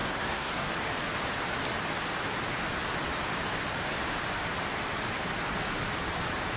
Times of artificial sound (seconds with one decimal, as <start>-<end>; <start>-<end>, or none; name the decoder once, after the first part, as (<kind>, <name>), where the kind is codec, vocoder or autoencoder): 0.0-0.7 (codec, SNAC)

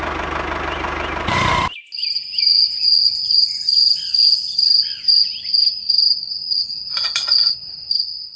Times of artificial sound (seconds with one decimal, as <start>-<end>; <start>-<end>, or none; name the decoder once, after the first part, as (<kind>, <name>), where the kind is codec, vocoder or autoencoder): 2.5-3.4 (vocoder, Vocos); 6.4-7.9

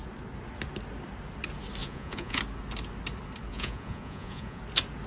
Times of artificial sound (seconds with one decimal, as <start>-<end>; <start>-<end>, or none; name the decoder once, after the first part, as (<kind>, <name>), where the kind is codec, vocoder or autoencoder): 1.8-2.4 (vocoder, Vocos); 3.5-4.6

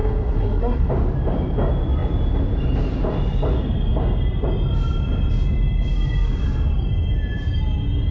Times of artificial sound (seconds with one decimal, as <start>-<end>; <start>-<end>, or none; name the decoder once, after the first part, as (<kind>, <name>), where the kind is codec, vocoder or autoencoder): 0.0-0.9 (codec, SNAC)